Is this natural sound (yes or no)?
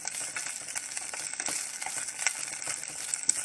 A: yes